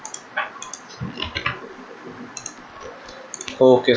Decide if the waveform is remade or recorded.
recorded